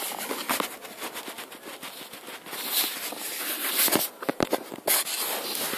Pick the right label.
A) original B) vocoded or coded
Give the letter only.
A